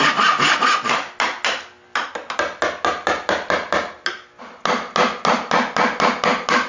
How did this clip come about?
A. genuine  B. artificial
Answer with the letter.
A